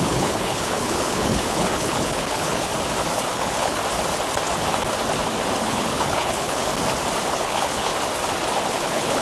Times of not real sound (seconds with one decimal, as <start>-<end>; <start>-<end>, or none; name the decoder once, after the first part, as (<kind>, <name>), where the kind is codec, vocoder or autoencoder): 0.0-2.7 (codec, HILCodec); 3.3-3.8; 5.6-6.7; 7.3-7.9; 8.7-9.2